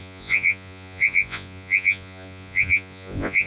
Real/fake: fake